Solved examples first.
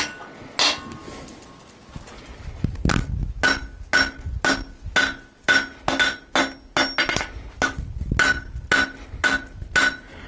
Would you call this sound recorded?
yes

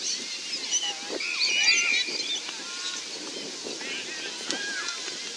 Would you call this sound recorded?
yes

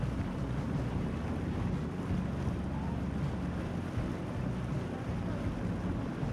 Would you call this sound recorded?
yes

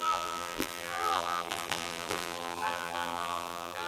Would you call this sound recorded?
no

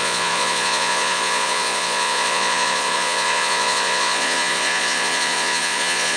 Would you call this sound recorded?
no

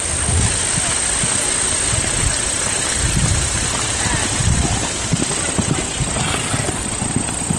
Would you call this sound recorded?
yes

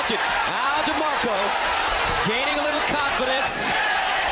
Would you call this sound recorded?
no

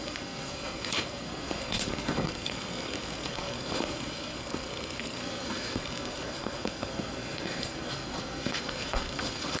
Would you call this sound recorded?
no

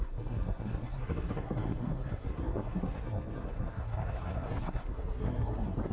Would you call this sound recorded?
no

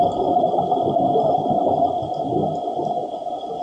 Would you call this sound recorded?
yes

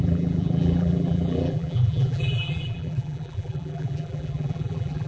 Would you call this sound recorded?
no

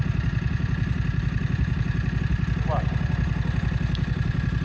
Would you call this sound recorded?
yes